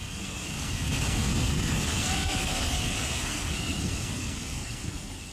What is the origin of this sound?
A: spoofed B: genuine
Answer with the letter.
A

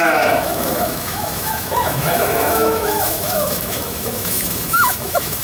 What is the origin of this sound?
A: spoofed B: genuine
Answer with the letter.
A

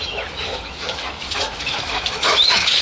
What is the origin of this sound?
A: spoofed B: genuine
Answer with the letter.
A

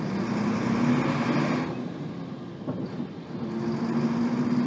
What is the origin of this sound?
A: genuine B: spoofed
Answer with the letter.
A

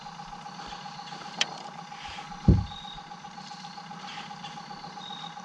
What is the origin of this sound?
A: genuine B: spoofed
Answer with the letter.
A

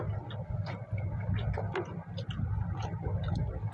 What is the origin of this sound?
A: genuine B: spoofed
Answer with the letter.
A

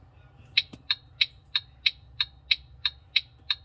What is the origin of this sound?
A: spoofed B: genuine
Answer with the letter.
B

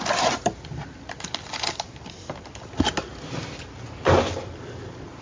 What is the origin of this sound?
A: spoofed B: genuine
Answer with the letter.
B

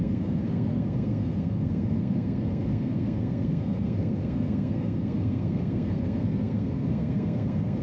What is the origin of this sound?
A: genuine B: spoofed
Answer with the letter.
B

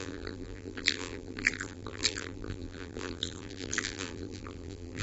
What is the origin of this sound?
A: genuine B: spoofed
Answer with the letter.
B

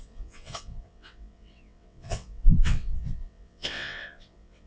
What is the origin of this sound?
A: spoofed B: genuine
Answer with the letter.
A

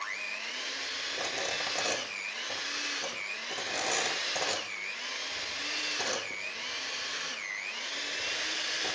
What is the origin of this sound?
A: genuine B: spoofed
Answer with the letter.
A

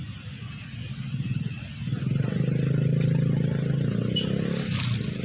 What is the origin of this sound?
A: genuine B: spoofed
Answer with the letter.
A